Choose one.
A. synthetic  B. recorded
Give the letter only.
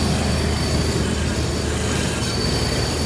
B